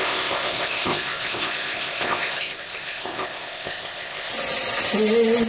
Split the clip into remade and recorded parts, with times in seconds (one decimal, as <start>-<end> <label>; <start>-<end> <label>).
0.0-4.3 remade; 4.3-5.5 recorded